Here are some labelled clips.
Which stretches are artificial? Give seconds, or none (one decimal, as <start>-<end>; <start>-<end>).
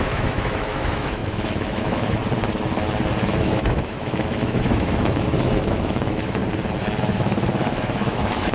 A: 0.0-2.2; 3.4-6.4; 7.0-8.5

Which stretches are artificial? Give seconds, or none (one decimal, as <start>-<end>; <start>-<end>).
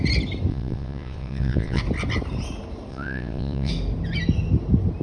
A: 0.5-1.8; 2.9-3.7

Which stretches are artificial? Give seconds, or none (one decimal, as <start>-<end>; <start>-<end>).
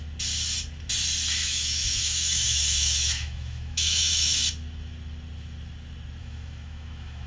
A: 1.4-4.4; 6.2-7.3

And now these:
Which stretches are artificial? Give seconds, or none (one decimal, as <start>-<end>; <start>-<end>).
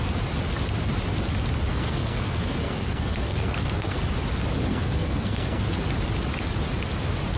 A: 1.7-4.0; 4.7-5.8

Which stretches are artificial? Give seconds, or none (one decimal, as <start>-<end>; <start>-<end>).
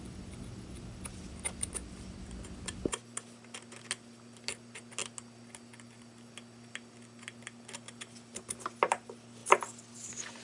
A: none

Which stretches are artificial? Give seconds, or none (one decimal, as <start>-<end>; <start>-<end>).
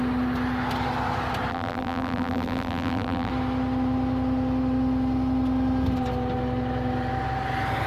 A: 1.5-3.3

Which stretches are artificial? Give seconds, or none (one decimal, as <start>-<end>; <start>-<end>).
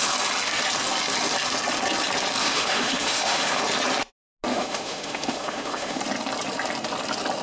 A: 2.4-3.6; 4.5-6.0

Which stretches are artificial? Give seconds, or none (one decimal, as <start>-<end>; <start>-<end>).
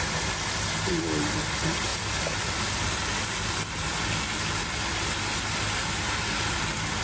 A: none